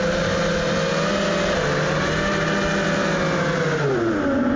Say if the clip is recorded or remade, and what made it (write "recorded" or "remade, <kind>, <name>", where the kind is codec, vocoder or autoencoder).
recorded